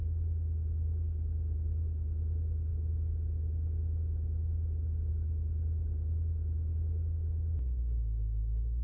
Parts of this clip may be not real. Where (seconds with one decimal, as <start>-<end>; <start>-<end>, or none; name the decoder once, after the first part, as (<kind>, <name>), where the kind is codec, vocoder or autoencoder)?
none